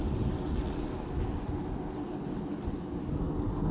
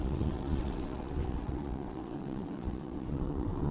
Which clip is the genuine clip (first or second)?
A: first